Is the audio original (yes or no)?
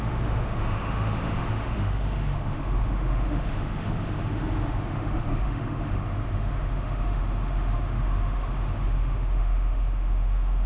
no